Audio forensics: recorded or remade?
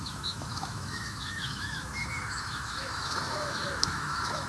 remade